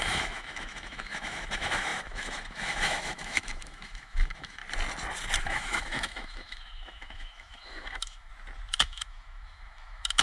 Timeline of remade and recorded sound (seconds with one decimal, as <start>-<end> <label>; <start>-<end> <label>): 0.0-4.6 remade; 4.6-5.4 recorded; 5.4-8.3 remade; 8.3-8.8 recorded; 8.8-10.2 remade